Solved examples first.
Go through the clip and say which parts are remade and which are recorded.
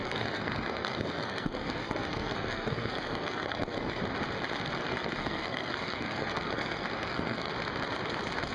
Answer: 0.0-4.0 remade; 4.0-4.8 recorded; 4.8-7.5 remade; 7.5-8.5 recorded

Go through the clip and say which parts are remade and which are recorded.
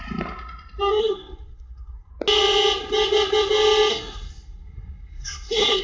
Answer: 0.0-1.0 recorded; 1.0-2.1 remade; 2.1-3.9 recorded; 3.9-5.8 remade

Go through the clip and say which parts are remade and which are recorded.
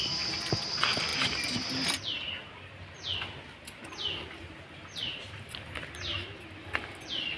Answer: 0.0-7.4 recorded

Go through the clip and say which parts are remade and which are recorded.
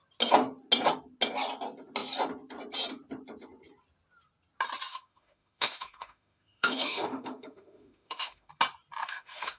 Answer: 0.0-4.9 recorded; 4.9-8.5 remade; 8.5-9.0 recorded; 9.0-9.6 remade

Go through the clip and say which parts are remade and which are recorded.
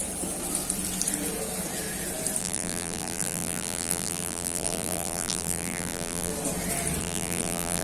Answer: 0.0-2.4 recorded; 2.4-6.3 remade; 6.3-7.0 recorded; 7.0-7.8 remade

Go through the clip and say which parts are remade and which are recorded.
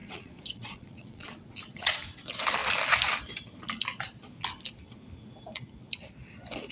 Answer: 0.0-1.9 remade; 1.9-6.7 recorded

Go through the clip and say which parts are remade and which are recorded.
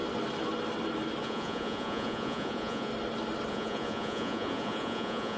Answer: 0.0-1.2 recorded; 1.2-2.9 remade; 2.9-3.5 recorded; 3.5-5.4 remade